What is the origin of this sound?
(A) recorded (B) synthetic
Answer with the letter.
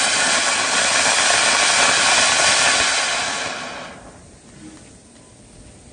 A